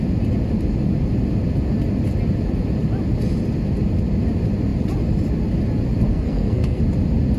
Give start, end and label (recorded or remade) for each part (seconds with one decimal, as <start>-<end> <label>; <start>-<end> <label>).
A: 0.0-6.1 recorded; 6.1-6.8 remade; 6.8-7.4 recorded